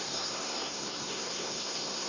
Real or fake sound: fake